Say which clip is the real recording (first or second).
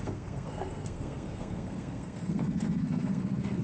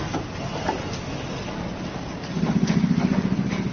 second